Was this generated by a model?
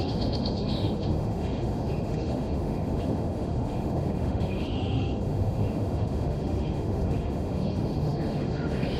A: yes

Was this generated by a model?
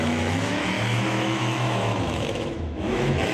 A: yes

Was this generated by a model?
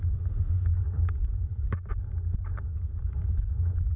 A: no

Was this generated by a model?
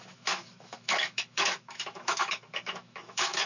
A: yes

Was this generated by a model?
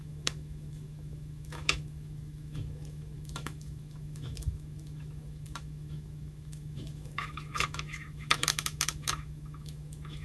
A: yes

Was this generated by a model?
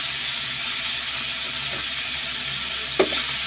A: no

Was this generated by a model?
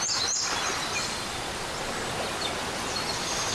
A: no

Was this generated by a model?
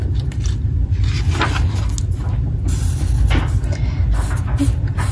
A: no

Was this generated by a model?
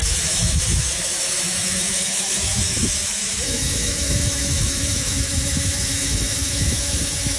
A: yes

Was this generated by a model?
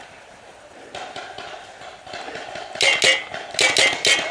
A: no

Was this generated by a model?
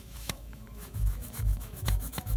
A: yes